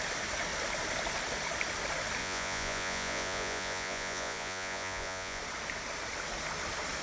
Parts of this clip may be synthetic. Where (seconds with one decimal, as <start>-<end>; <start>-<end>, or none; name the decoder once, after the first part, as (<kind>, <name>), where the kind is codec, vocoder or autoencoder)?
2.2-5.4 (vocoder, Vocos)